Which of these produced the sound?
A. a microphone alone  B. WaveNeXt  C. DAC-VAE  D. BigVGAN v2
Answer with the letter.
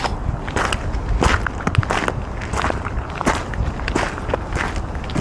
A